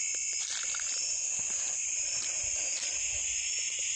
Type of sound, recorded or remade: recorded